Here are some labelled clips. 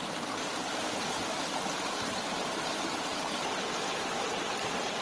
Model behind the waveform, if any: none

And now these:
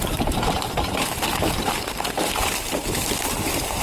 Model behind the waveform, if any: vocoder, BigVGAN v2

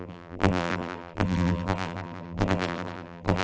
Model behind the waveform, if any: vocoder, BigVGAN v2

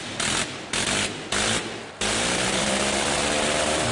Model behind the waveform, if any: vocoder, BigVGAN v2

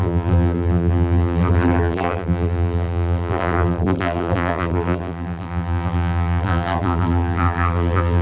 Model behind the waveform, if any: vocoder, BigVGAN v2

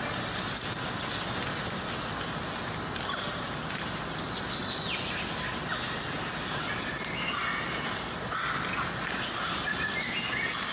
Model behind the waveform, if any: none